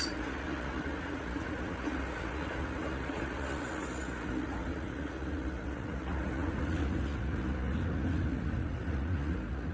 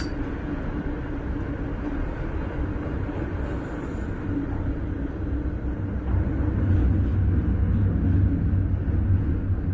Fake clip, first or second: first